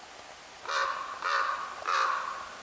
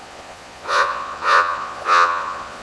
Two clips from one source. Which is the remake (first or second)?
second